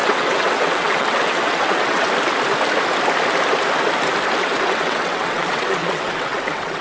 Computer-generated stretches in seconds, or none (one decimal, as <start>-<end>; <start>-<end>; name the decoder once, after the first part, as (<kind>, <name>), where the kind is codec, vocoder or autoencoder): 0.0-2.1 (vocoder, WaveNeXt); 4.4-6.8